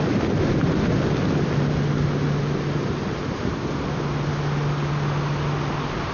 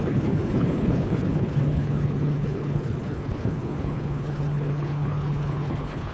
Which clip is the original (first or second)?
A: first